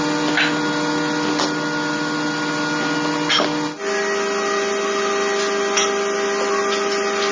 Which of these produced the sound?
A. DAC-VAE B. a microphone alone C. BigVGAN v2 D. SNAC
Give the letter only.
B